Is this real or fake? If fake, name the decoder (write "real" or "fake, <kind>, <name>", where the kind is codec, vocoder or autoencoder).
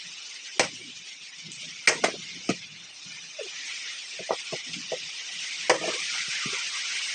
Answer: real